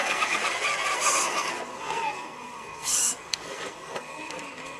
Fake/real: fake